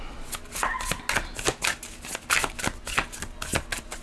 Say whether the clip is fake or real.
real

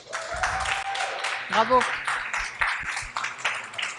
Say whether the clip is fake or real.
real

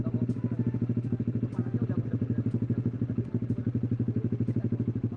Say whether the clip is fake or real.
real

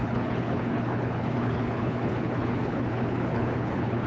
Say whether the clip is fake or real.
fake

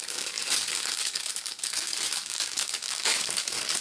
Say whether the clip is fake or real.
fake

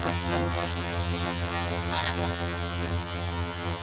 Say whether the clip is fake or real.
fake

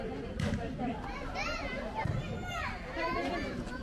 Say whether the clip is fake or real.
real